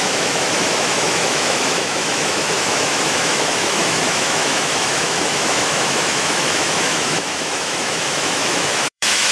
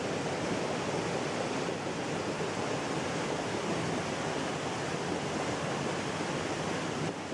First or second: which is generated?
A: first